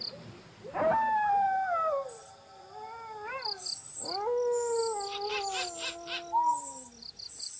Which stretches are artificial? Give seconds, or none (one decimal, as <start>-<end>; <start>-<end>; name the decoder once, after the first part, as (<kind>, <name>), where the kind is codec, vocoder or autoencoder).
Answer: none